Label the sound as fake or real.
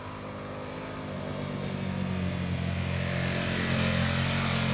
real